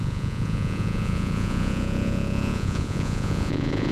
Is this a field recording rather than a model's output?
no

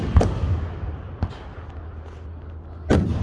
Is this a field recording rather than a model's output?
yes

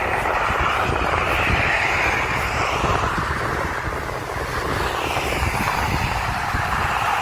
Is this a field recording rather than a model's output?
yes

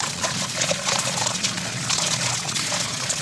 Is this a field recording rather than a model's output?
no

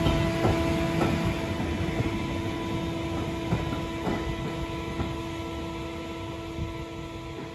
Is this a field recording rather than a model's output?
yes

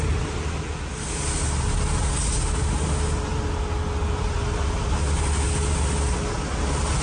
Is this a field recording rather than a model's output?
yes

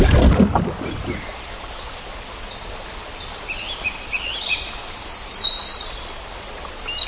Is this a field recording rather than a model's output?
yes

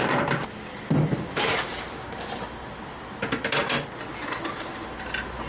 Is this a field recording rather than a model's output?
yes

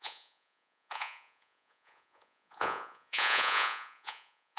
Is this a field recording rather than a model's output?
no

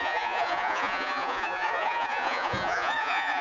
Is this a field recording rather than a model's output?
no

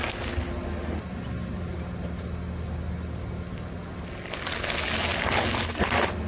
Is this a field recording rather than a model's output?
yes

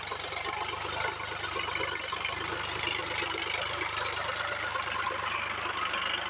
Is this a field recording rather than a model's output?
yes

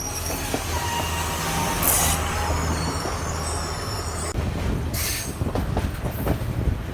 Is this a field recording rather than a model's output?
yes